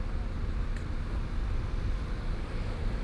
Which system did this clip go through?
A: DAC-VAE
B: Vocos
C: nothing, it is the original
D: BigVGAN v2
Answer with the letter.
C